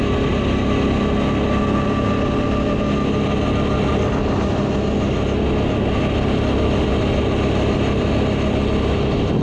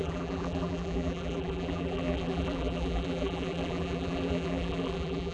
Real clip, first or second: first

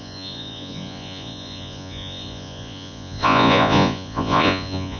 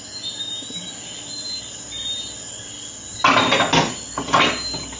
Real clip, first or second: second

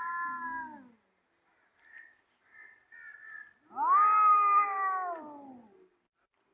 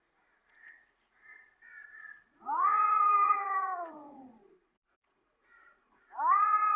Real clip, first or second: first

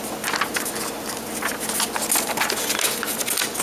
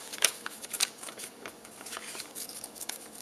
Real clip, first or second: first